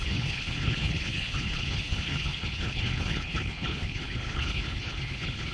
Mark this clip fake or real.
fake